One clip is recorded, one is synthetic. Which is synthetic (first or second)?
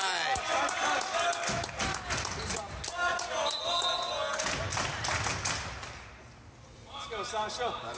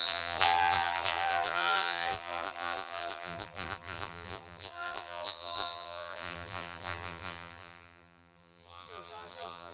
second